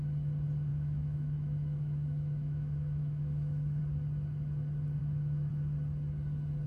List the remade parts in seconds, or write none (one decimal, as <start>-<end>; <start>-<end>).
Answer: 0.7-3.8; 5.0-5.5